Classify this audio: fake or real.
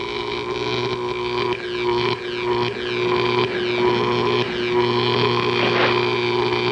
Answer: real